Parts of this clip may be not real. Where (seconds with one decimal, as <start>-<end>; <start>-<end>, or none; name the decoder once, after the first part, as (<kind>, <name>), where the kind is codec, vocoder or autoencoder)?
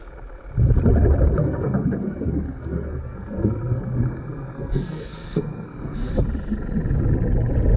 1.4-6.1 (codec, SNAC)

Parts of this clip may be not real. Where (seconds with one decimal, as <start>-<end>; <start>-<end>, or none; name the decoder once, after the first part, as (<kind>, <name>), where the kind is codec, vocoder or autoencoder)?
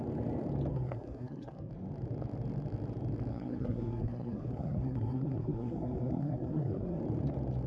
0.7-1.7 (codec, SNAC); 3.3-7.0